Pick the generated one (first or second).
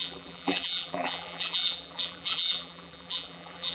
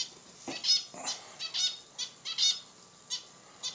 first